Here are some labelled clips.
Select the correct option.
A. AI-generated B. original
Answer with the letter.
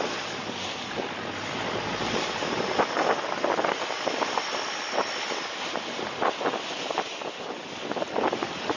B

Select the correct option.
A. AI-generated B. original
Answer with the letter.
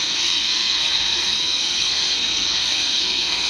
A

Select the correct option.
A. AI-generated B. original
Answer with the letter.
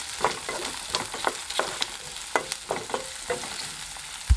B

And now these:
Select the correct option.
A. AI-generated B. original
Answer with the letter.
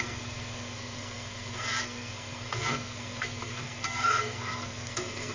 A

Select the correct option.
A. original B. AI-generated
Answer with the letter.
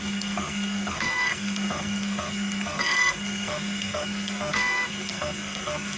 B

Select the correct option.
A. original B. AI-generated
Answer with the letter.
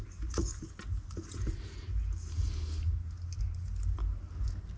A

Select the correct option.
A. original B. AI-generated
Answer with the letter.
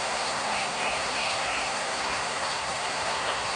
B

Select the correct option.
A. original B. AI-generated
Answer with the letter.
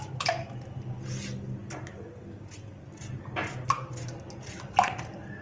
A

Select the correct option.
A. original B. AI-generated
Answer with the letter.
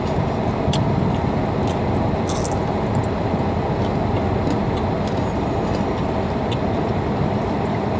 A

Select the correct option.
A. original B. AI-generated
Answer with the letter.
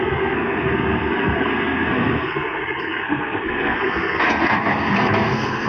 B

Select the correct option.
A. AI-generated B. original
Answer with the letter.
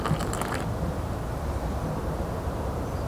B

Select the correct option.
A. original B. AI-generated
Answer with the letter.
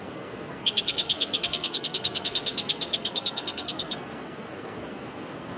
B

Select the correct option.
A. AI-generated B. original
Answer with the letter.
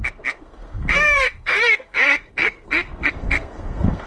A